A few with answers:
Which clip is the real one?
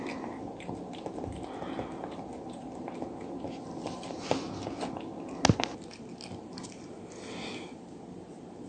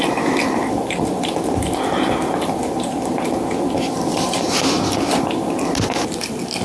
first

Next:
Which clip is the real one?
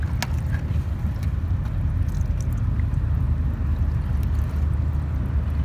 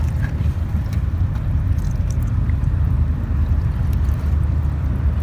first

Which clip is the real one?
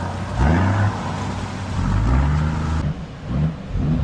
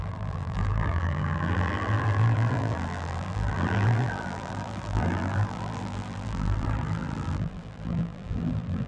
first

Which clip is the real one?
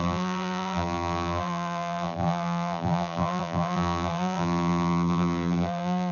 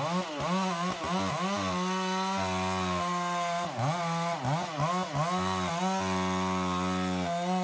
second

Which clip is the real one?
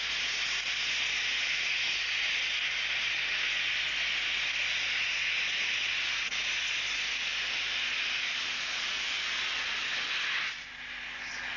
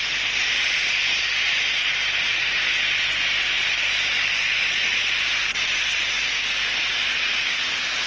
first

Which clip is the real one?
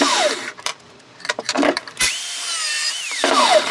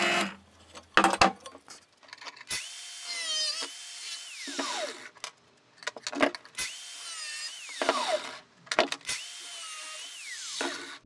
second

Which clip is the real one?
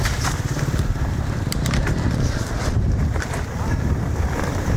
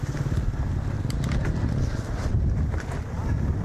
second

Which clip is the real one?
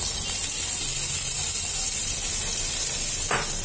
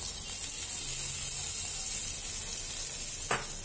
second